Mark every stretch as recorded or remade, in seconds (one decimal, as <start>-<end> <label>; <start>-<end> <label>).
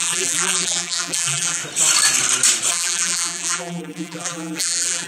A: 0.0-1.6 remade; 1.6-2.7 recorded; 2.7-5.1 remade